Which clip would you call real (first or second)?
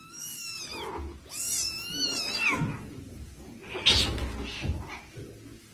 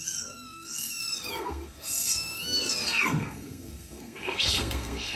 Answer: first